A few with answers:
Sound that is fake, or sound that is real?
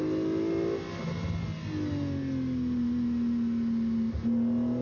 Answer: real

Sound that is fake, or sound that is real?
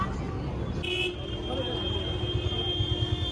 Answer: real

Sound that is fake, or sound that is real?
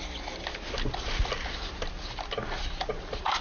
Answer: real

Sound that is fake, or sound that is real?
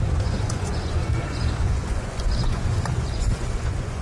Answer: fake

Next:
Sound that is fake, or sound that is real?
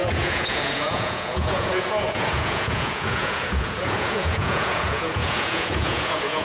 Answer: fake